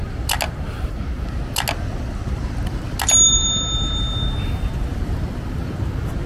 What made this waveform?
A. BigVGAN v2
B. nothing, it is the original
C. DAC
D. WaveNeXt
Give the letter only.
B